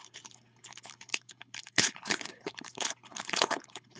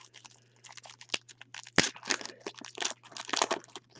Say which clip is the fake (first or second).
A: first